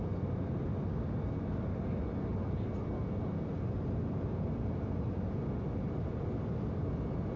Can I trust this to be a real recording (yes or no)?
yes